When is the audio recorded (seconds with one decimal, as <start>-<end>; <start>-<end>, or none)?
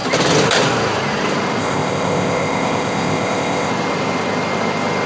0.0-1.6; 3.7-5.1